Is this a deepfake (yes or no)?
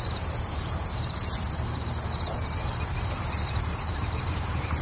yes